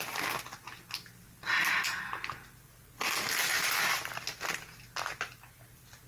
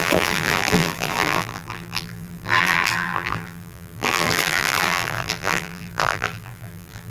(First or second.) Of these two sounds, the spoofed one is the second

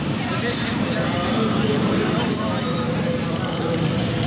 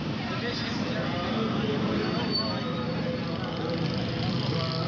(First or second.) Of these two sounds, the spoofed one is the first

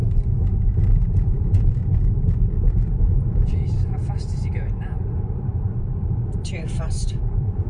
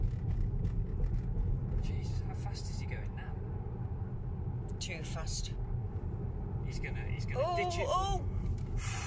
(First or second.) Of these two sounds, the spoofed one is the first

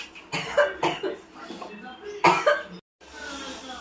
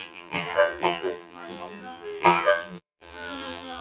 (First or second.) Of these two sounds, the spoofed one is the second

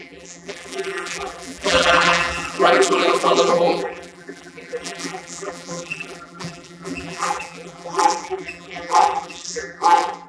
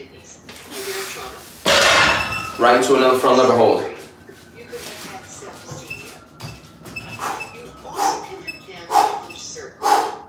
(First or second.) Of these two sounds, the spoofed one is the first